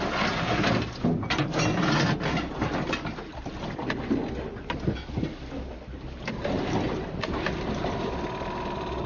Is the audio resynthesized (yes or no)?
no